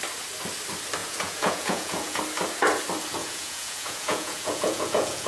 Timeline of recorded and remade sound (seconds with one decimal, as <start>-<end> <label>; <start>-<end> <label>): 0.0-1.0 recorded; 1.0-2.2 remade; 2.2-3.2 recorded; 3.2-5.3 remade